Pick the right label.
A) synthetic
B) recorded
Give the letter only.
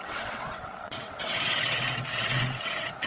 A